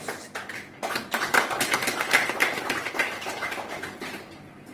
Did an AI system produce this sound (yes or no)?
no